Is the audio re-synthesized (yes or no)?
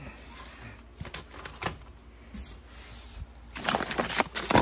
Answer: no